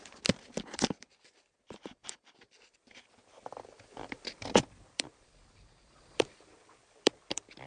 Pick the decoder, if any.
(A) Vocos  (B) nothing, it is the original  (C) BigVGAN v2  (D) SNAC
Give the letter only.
C